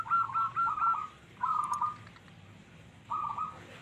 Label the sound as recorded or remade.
recorded